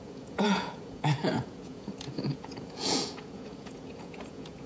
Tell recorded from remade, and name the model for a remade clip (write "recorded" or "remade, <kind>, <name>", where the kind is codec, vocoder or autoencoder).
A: remade, vocoder, Vocos